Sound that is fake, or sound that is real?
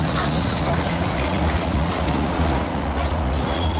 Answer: fake